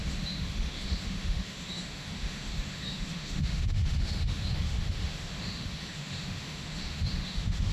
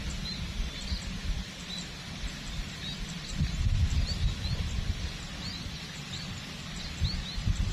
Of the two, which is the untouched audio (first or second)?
second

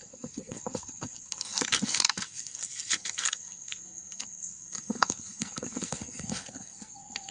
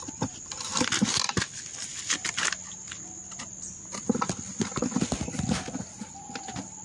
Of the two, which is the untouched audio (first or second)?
second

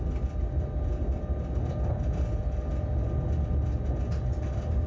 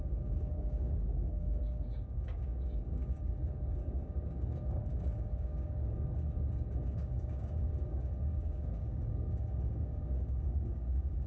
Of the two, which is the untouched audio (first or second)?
first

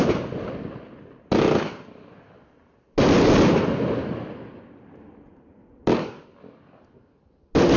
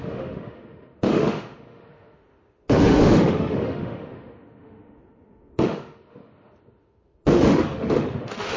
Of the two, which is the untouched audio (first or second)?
first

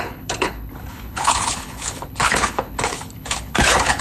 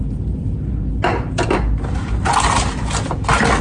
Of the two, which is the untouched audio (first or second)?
second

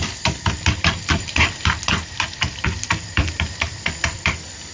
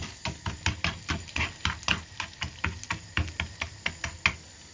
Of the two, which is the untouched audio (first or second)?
second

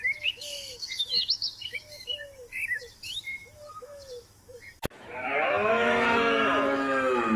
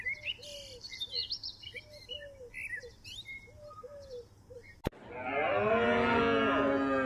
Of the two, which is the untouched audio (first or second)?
second